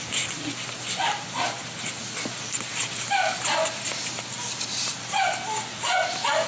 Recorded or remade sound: recorded